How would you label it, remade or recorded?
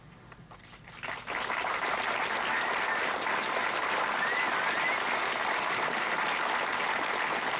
recorded